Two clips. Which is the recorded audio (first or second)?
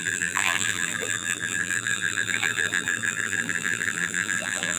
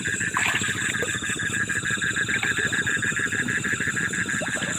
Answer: second